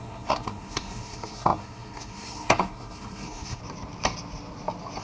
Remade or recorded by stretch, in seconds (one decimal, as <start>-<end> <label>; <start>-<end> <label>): 0.0-3.6 remade; 3.6-5.0 recorded